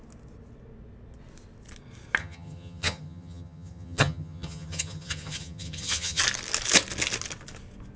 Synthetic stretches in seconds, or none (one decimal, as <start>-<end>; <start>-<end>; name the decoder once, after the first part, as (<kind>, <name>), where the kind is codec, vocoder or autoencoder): 2.2-6.2 (vocoder, HiFi-GAN)